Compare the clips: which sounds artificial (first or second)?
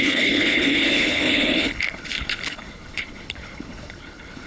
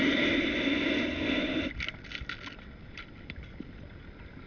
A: first